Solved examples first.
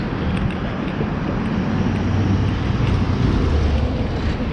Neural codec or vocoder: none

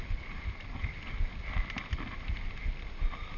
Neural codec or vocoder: none